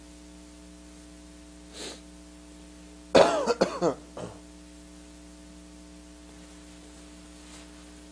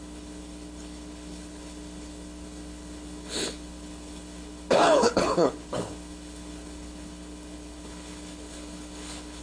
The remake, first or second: second